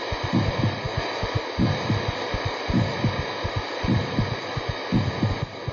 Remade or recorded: recorded